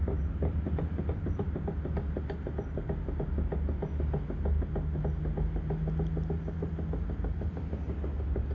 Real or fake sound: real